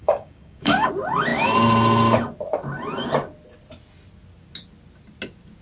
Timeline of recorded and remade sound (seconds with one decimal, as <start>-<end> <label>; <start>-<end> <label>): 0.0-0.9 remade; 0.9-5.6 recorded